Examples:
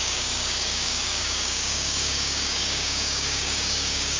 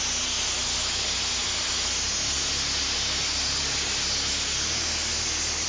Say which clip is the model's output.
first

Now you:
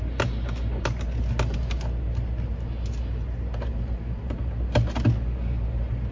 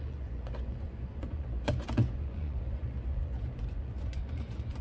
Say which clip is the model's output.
second